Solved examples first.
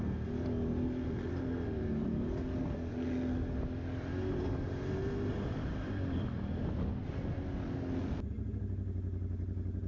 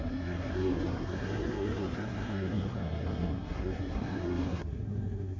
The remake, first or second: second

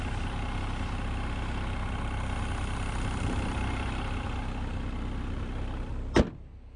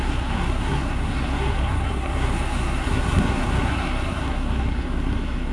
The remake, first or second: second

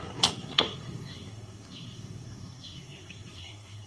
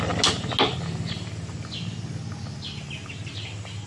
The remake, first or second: first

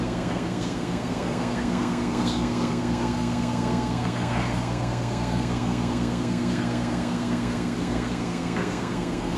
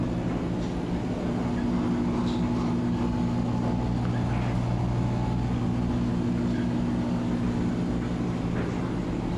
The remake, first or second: first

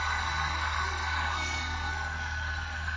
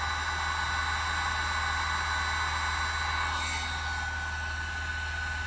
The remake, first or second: first